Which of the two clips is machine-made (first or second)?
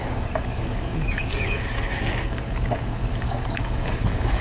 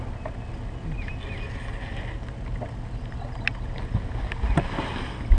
first